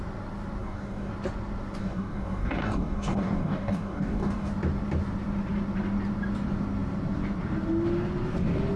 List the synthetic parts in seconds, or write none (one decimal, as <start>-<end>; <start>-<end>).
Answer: 0.6-1.1; 1.8-4.5